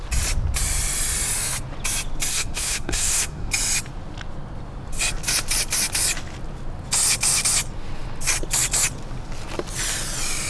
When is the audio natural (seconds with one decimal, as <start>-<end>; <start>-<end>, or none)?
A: 0.0-2.3; 3.5-10.5